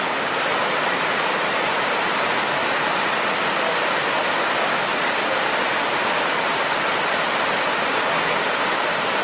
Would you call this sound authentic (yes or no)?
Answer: yes